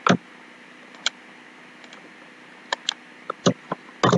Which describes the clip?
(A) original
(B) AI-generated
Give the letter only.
A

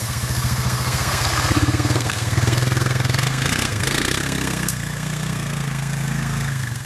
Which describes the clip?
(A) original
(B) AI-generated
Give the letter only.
B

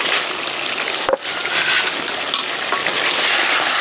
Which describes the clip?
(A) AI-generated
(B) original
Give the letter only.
B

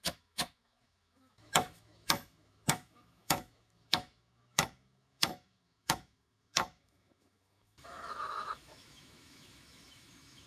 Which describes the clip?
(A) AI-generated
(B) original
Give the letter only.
A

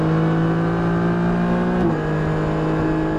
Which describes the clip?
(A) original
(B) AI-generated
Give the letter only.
A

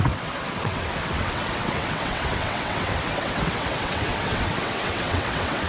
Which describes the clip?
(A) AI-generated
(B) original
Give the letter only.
A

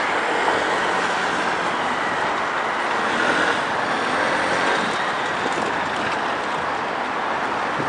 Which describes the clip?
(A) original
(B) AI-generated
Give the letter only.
A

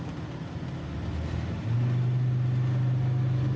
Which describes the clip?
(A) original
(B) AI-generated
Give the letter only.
A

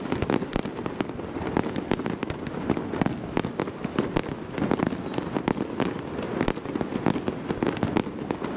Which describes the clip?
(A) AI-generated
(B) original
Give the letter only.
B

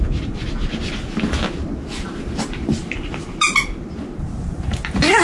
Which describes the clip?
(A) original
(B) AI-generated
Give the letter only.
A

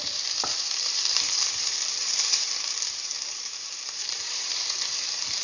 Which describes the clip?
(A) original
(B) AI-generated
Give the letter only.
B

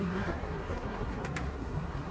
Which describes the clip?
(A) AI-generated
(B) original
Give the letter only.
A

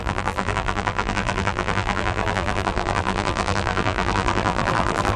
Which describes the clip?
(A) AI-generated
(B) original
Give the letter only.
A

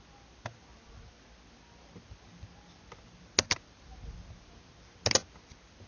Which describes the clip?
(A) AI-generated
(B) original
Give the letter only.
B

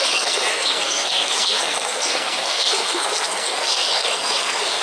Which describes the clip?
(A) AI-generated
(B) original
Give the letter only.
A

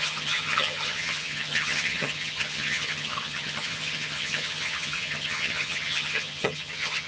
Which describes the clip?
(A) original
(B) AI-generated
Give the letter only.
B